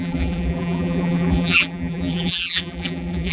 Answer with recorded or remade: remade